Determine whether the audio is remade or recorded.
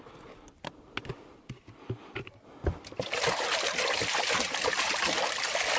recorded